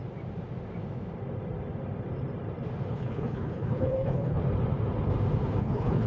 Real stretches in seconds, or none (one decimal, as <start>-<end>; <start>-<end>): 0.0-2.9; 4.4-5.6